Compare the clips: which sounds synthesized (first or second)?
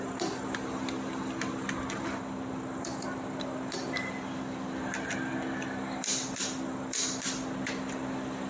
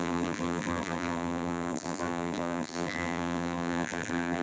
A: second